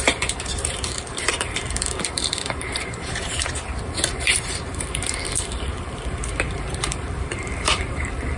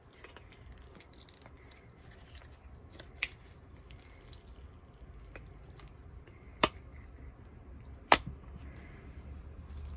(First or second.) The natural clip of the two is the second